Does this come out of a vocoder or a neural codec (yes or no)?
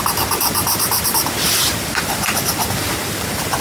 no